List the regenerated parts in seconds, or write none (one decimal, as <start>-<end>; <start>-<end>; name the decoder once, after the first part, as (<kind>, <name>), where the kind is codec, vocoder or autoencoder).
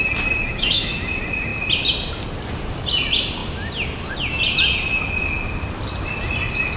0.4-0.9 (autoencoder, DAC-VAE)